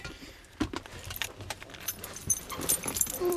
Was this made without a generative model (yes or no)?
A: no